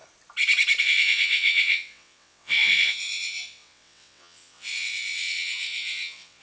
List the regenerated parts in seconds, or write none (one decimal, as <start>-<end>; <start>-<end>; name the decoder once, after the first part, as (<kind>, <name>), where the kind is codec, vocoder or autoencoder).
0.8-6.4 (vocoder, WaveNeXt)